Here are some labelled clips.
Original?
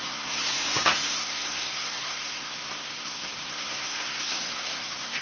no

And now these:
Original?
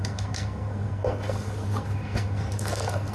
no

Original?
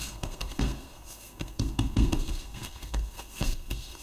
no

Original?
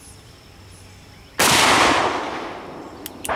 yes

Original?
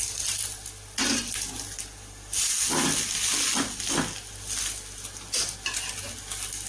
yes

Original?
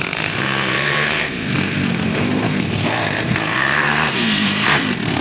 no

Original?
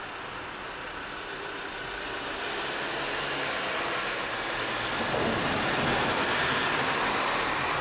yes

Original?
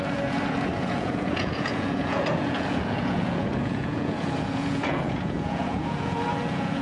no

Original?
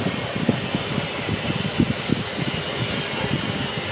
yes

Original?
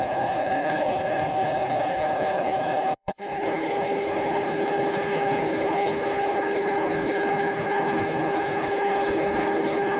no